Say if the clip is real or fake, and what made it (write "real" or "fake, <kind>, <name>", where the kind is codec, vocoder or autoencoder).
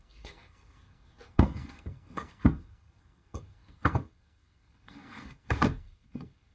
fake, codec, SNAC